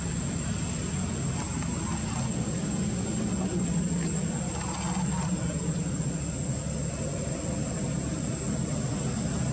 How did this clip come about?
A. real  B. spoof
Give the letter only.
A